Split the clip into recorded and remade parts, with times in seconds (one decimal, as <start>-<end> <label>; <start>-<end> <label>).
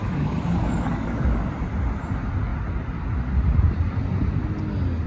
0.0-1.5 remade; 1.5-5.1 recorded